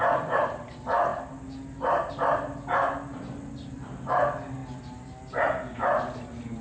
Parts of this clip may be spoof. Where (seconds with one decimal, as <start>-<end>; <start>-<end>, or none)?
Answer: 0.0-4.6; 6.1-6.6